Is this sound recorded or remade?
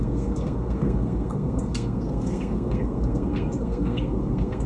remade